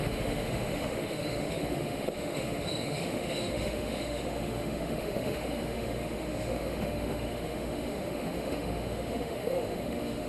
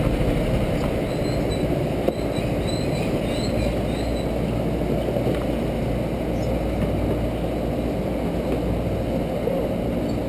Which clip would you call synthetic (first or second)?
first